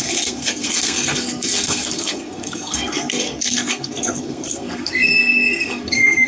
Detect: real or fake fake